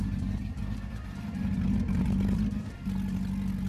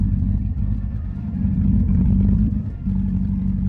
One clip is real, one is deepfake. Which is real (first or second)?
first